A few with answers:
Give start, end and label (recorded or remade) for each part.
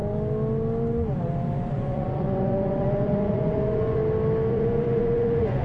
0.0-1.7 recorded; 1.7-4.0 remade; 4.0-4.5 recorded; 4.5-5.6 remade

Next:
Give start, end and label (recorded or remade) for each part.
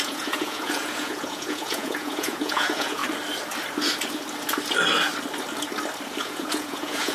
0.0-3.0 remade; 3.0-6.2 recorded; 6.2-7.1 remade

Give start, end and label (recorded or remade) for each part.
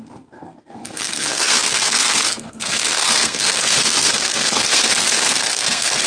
0.0-6.1 remade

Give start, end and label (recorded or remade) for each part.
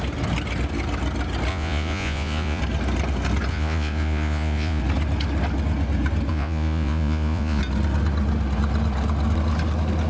0.0-1.5 recorded; 1.5-2.6 remade; 2.6-3.5 recorded; 3.5-4.8 remade; 4.8-6.3 recorded; 6.3-7.6 remade; 7.6-10.1 recorded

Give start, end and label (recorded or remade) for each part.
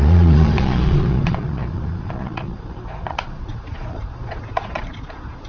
0.0-5.5 remade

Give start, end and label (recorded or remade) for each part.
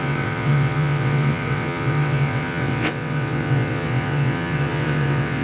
0.0-5.4 remade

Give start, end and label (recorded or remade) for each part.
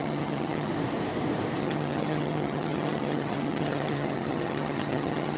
0.0-0.7 remade; 0.7-1.6 recorded; 1.6-5.4 remade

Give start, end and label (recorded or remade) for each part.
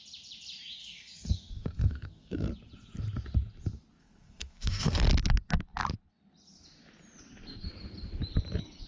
0.0-0.8 recorded; 0.8-2.5 remade; 2.5-4.0 recorded; 4.0-5.0 remade; 5.0-8.9 recorded